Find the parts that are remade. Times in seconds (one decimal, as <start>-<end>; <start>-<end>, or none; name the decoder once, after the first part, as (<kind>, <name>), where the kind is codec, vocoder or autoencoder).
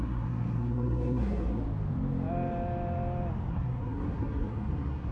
0.0-1.6 (codec, SNAC); 3.5-5.1